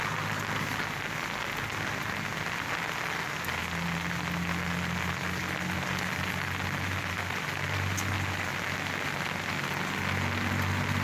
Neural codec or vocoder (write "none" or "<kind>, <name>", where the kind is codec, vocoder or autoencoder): none